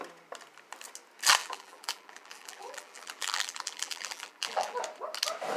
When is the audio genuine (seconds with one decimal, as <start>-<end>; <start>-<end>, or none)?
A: 0.0-1.4; 4.8-5.6